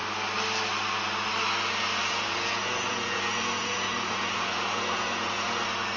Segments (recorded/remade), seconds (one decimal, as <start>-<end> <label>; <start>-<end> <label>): 0.0-2.0 recorded; 2.0-5.6 remade; 5.6-6.0 recorded